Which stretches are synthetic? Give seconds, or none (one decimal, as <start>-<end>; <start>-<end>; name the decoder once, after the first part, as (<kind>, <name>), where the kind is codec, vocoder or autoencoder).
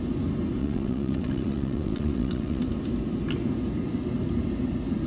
0.6-2.6 (vocoder, WaveNeXt)